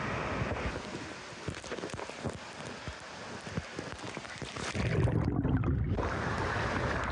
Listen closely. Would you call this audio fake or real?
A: real